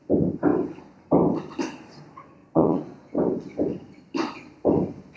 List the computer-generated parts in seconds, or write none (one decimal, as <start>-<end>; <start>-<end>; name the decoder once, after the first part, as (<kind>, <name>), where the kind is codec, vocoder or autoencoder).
2.4-3.0 (vocoder, Vocos)